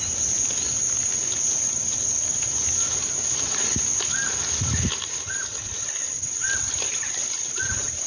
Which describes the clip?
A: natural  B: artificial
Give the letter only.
A